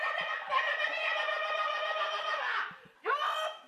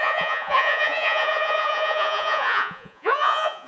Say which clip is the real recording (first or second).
first